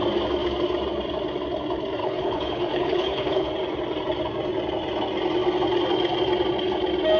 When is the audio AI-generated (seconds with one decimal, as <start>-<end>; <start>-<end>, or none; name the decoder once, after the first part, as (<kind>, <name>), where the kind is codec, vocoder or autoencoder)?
2.0-3.5 (codec, HILCodec)